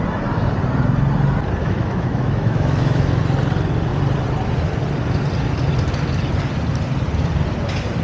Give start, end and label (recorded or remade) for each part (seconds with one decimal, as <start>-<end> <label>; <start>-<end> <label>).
0.0-1.6 recorded; 1.6-3.2 remade; 3.2-8.0 recorded